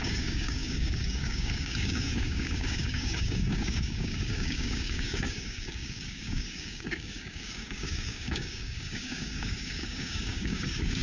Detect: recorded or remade remade